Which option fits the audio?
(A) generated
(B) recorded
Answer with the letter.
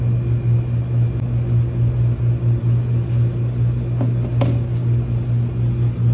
B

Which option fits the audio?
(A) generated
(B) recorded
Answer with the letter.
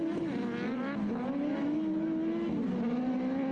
B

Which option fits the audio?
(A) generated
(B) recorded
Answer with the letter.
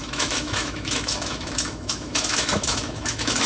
A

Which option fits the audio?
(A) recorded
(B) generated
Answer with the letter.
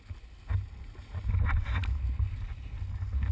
A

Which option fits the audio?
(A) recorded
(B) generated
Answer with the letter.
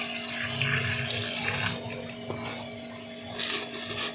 A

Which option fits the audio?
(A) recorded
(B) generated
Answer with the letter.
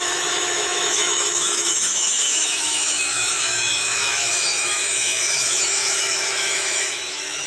B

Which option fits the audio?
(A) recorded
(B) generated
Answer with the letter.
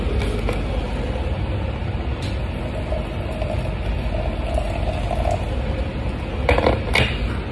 A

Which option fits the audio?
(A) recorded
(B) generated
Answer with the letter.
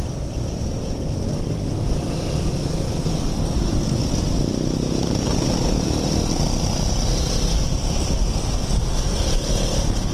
A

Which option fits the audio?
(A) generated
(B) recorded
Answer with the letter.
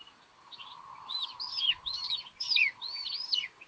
B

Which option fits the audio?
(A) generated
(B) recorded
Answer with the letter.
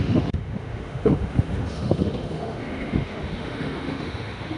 A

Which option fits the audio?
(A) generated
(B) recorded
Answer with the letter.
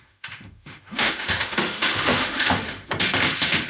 A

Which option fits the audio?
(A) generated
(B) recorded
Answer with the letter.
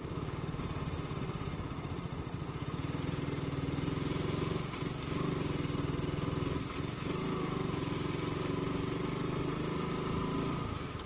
B